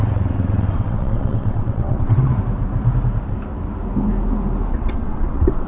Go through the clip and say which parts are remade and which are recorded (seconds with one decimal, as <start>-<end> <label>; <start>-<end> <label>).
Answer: 0.0-2.3 remade; 2.3-4.7 recorded; 4.7-5.7 remade